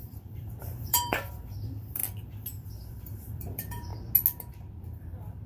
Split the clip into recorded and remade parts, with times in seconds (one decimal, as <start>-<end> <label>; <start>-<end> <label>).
0.0-2.0 remade; 2.0-2.9 recorded; 2.9-3.9 remade; 3.9-4.5 recorded; 4.5-5.5 remade